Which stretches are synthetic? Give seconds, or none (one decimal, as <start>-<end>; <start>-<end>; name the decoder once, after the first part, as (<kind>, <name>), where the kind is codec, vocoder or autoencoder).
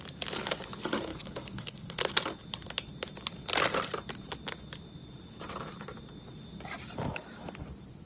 1.1-2.0 (codec, HILCodec)